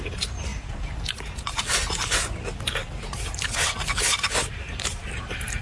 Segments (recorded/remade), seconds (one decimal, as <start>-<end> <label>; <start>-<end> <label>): 0.0-3.9 remade; 3.9-4.5 recorded; 4.5-5.6 remade